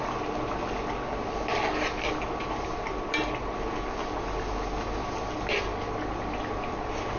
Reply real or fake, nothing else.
real